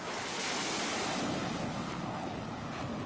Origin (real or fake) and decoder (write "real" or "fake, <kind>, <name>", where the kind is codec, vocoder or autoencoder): real